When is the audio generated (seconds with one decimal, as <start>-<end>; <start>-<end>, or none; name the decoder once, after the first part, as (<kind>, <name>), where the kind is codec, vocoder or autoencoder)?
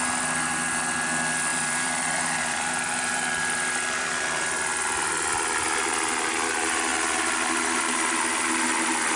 1.5-2.7 (vocoder, BigVGAN v2)